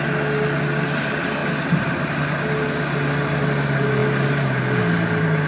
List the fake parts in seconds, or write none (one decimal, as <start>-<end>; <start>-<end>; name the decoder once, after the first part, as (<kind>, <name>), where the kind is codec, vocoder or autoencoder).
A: none